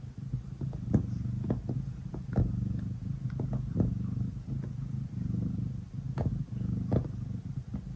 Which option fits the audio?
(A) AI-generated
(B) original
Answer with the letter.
B